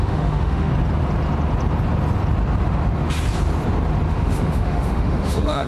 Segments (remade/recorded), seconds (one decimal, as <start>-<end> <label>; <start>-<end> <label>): 0.0-0.7 remade; 0.7-4.1 recorded; 4.1-5.7 remade